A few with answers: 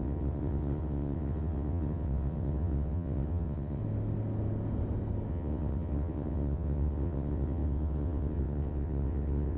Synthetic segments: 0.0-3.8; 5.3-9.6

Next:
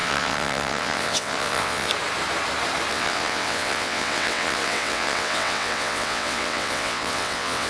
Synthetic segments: 0.0-1.9; 2.9-7.7

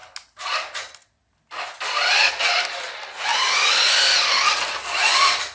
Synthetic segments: none

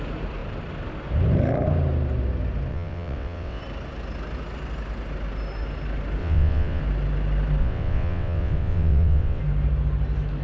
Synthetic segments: 2.7-3.6; 6.2-6.8; 7.6-9.4